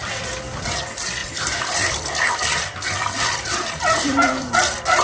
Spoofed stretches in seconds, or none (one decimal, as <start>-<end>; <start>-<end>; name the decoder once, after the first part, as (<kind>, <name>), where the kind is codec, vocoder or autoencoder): 0.0-5.0 (vocoder, BigVGAN v2)

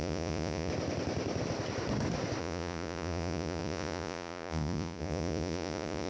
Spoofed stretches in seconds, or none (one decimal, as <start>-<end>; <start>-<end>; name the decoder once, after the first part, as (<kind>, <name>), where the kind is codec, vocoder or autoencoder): 0.0-0.7 (vocoder, Vocos); 2.4-6.1

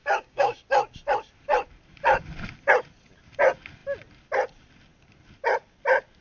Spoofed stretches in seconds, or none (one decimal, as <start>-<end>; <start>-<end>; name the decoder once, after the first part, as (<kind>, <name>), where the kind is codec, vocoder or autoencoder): 0.0-0.6 (codec, DAC)

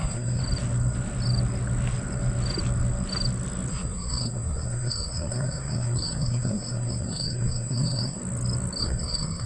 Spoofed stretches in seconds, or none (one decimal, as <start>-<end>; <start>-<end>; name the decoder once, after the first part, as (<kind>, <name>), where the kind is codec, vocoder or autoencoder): 0.0-0.4 (codec, SNAC); 3.7-8.2; 8.8-9.5

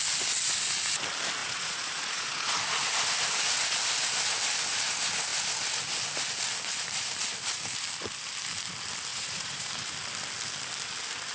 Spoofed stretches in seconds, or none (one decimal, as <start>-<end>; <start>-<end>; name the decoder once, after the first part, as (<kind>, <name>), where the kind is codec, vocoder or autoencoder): 1.4-2.6 (vocoder, Vocos); 9.1-9.7